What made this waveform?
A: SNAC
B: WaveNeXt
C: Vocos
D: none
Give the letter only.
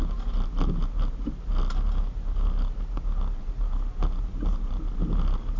D